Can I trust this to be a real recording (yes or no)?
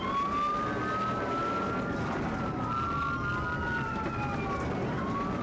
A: yes